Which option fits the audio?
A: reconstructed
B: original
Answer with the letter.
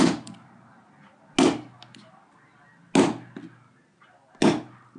B